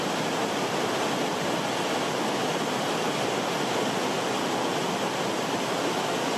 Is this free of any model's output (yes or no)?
yes